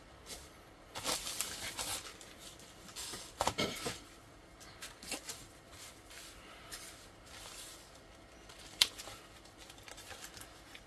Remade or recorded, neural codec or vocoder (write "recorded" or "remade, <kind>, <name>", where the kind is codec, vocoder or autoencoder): remade, vocoder, BigVGAN v2